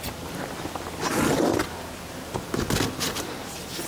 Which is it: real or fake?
real